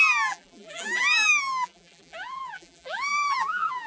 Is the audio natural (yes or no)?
no